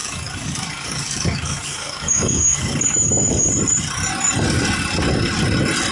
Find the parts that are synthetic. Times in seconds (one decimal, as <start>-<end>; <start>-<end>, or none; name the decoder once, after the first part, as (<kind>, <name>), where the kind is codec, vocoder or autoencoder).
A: 0.0-3.5 (codec, DAC)